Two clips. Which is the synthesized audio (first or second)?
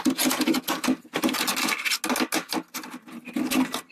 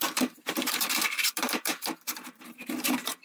second